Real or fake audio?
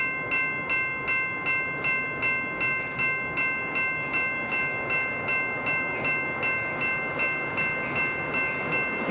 real